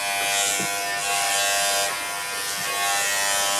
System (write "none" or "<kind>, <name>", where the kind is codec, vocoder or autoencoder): none